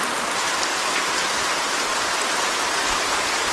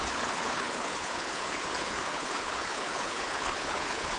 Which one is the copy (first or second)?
second